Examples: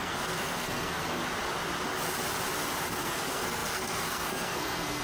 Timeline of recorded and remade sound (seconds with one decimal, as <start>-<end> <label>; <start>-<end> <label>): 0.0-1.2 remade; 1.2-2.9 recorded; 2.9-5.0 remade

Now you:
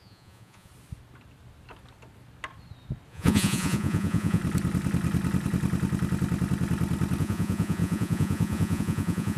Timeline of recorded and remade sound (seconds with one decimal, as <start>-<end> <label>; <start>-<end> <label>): 0.0-0.7 remade; 0.7-3.1 recorded; 3.1-4.4 remade; 4.4-7.2 recorded; 7.2-9.4 remade

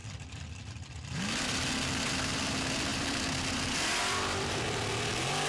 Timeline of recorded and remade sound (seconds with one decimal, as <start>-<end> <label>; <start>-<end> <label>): 0.0-5.5 remade

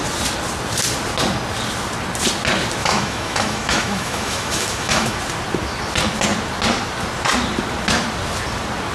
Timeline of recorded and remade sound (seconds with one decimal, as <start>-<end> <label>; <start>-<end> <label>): 0.0-2.8 recorded; 2.8-5.2 remade; 5.2-8.9 recorded